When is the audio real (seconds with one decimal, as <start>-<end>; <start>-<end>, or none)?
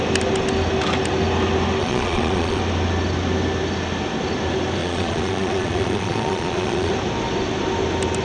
0.0-1.8; 2.6-4.8; 6.9-8.2